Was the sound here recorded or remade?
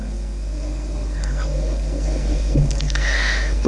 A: remade